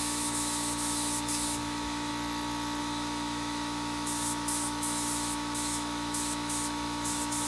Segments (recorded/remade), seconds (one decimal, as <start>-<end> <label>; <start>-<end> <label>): 0.0-2.1 remade; 2.1-2.8 recorded; 2.8-7.5 remade